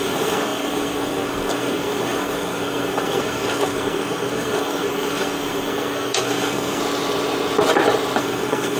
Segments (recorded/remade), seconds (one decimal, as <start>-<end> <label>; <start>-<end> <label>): 0.0-6.8 remade; 6.8-8.2 recorded; 8.2-8.8 remade